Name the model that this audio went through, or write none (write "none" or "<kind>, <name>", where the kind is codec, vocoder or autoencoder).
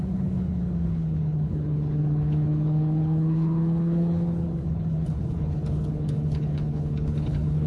codec, HILCodec